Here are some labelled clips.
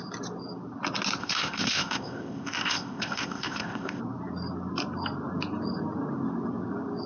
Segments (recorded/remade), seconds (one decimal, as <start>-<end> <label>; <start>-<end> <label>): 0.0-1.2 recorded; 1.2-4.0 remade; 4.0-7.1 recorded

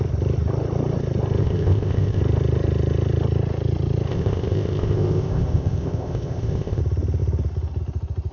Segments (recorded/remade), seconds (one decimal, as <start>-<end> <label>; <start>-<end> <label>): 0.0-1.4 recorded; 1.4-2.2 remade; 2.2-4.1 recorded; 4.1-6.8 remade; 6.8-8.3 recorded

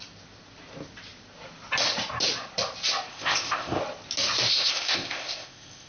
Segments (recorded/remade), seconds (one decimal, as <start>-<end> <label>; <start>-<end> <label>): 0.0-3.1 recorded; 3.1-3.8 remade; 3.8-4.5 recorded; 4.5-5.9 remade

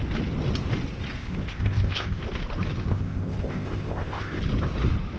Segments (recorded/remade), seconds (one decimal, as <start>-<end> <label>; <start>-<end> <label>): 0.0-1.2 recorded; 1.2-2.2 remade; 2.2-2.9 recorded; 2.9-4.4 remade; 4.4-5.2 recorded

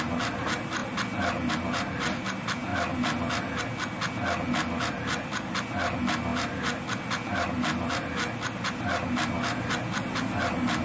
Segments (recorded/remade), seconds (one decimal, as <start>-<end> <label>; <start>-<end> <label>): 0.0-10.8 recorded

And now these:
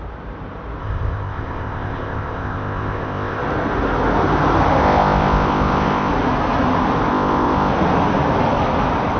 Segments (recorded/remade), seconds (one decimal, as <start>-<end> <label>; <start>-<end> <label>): 0.0-0.8 recorded; 0.8-3.4 remade; 3.4-4.8 recorded; 4.8-6.1 remade; 6.1-7.1 recorded; 7.1-7.7 remade; 7.7-9.2 recorded

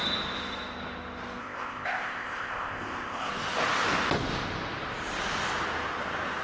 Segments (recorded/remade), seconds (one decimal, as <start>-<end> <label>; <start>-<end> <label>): 0.0-1.4 recorded; 1.4-3.3 remade; 3.3-6.4 recorded